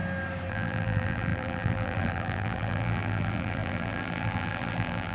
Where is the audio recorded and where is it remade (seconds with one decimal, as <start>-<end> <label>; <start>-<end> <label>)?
0.0-0.5 recorded; 0.5-5.1 remade